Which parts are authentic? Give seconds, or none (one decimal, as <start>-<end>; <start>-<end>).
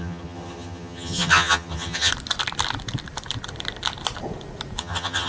2.1-4.8